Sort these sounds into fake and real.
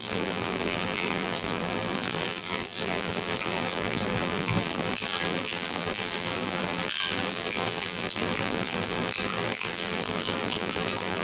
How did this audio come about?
fake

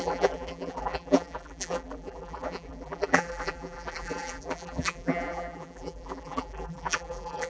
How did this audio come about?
fake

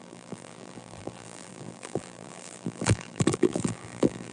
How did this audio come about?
fake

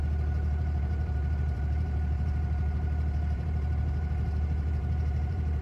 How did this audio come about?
fake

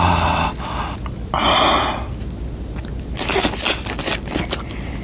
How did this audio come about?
real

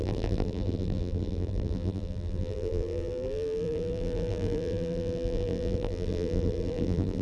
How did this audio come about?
fake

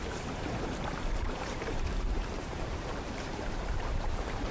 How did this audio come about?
fake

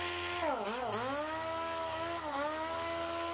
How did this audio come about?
real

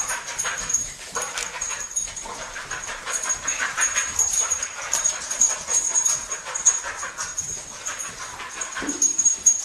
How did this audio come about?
fake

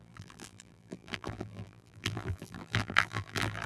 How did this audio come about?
fake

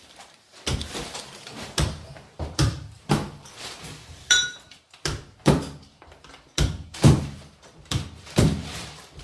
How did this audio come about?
fake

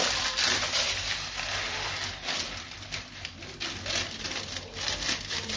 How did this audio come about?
real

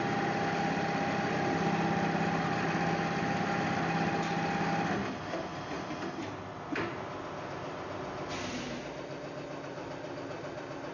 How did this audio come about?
real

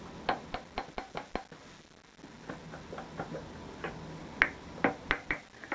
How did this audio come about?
real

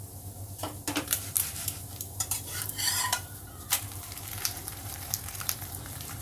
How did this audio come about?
fake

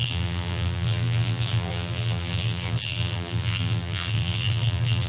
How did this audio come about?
fake